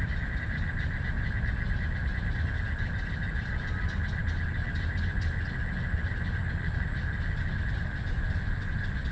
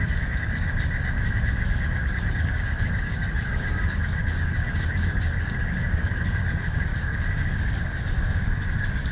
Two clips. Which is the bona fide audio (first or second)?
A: first